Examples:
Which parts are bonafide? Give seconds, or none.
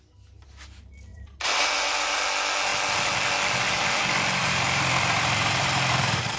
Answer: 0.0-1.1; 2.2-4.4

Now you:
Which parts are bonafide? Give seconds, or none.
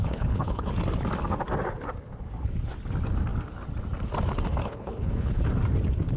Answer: 0.7-4.6; 5.4-6.2